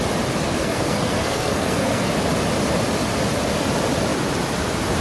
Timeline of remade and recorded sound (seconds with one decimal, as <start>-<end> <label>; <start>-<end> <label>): 0.0-0.4 recorded; 0.4-2.1 remade; 2.1-5.0 recorded